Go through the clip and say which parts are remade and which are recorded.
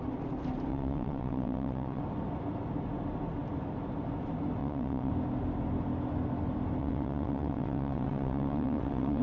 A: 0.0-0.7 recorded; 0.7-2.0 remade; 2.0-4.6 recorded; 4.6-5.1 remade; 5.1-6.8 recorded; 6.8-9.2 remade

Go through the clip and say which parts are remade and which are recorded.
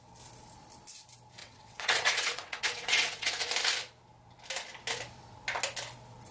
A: 0.0-1.4 recorded; 1.4-3.3 remade; 3.3-6.3 recorded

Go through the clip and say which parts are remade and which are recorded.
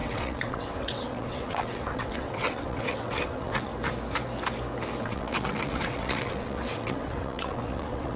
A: 0.0-3.7 remade; 3.7-5.0 recorded; 5.0-8.2 remade